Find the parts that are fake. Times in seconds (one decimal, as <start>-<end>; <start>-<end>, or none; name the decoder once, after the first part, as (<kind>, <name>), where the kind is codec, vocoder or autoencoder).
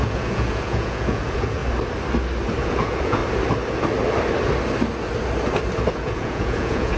0.0-1.6 (vocoder, Vocos); 2.6-3.2; 5.9-7.0